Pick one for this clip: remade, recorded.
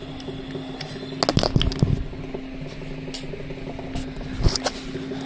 recorded